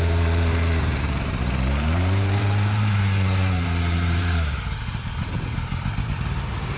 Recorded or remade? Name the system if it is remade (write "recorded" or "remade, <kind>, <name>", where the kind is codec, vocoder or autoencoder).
remade, vocoder, BigVGAN v2